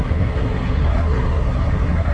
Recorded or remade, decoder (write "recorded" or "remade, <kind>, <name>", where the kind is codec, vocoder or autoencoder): remade, codec, SNAC